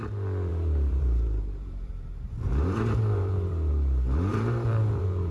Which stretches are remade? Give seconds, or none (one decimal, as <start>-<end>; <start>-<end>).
0.5-3.7; 4.3-5.3